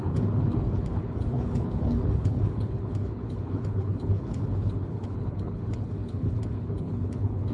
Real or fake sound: fake